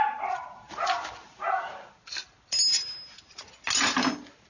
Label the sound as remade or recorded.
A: recorded